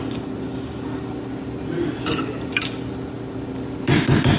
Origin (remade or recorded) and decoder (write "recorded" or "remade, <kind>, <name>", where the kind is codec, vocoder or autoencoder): recorded